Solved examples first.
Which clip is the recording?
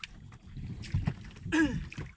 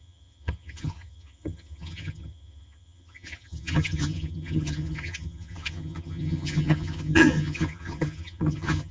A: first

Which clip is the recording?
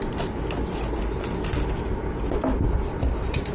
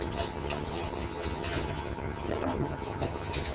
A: first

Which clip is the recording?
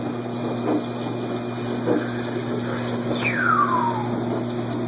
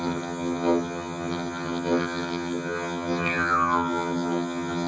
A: first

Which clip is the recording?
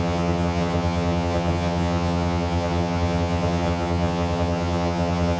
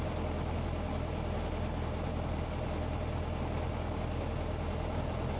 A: second